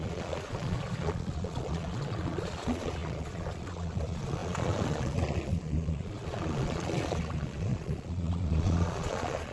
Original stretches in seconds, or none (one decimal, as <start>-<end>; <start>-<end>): none